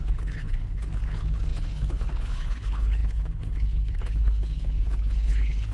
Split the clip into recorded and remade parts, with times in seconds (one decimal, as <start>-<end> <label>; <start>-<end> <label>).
0.0-5.7 remade